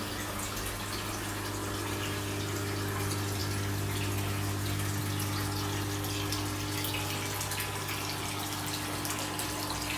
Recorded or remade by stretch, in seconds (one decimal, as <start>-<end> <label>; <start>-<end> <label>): 0.0-10.0 recorded